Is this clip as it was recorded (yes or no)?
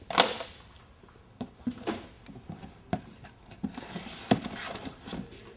yes